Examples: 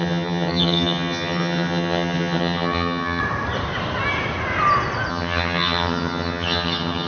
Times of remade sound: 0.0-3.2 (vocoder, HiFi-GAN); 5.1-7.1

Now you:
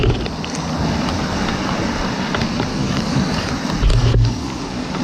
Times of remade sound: 2.7-3.5 (codec, DAC); 3.9-5.0